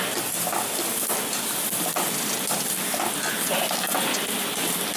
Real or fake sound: real